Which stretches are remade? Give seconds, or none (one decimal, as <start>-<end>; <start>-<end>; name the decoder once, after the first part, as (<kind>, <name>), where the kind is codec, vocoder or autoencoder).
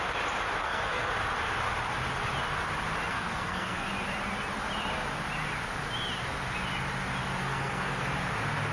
0.6-1.1 (codec, SNAC); 3.1-3.9; 7.4-8.0